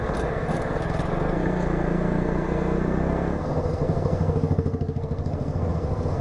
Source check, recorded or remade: remade